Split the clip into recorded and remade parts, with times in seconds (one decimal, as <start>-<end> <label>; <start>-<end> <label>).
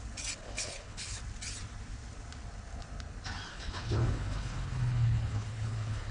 0.0-0.4 recorded; 0.4-1.2 remade; 1.2-3.5 recorded; 3.5-6.1 remade